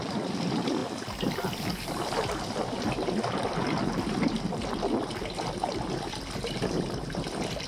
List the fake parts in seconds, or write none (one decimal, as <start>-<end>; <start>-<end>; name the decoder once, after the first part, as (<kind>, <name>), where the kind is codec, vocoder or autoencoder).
none